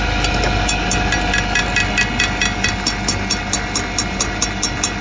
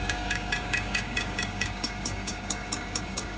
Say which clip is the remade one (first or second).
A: second